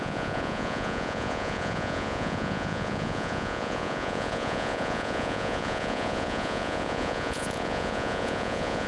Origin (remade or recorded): remade